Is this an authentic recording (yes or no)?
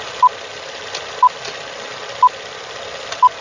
yes